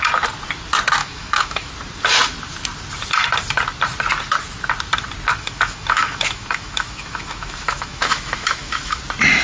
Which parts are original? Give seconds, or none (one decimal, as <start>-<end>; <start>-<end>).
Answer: 0.0-1.0; 1.7-5.3; 9.0-9.4